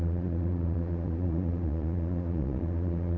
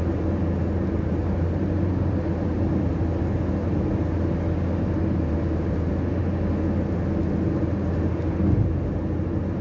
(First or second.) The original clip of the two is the second